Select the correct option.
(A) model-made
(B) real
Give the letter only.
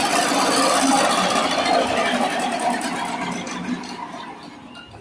B